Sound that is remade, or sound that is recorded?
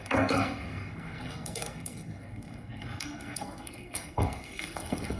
remade